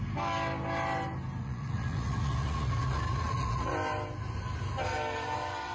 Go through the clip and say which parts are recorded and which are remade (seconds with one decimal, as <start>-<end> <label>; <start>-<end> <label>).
0.0-1.4 recorded; 1.4-3.7 remade; 3.7-5.7 recorded